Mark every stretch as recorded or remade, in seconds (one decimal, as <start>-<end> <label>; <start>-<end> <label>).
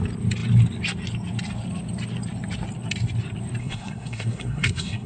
0.0-3.6 recorded; 3.6-5.1 remade